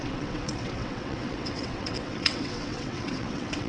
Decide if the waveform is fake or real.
fake